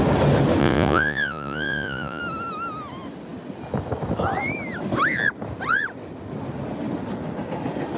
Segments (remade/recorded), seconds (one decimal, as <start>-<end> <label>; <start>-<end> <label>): 0.0-0.6 recorded; 0.6-2.2 remade; 2.2-8.0 recorded